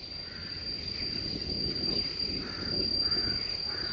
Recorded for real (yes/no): yes